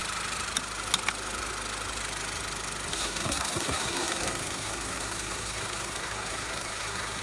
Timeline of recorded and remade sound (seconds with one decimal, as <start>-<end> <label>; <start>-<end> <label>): 0.0-2.9 recorded; 2.9-7.2 remade